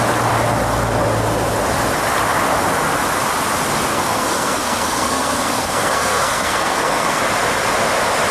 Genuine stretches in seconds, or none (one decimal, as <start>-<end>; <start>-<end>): 0.0-3.9; 7.2-8.3